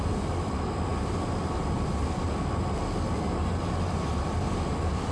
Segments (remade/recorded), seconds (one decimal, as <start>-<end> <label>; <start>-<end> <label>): 0.0-5.1 recorded